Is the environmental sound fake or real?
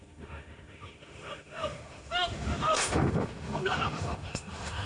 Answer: fake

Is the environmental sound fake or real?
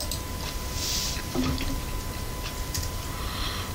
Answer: real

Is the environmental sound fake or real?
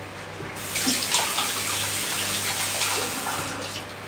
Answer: real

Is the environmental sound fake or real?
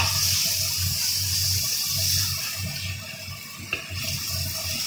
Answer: real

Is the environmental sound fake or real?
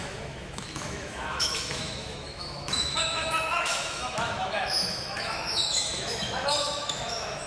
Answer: fake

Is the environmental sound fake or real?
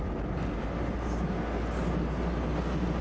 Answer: real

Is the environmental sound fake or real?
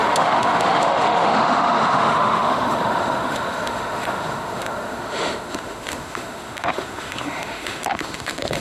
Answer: fake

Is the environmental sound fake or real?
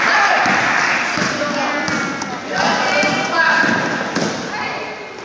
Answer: real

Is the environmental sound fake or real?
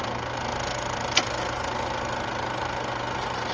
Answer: real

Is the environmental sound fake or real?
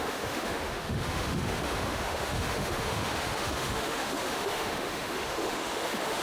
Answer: fake